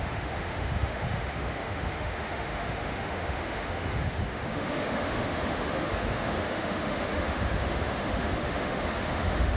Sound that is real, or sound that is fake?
fake